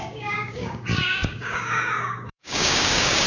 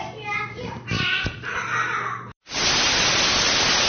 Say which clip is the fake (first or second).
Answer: first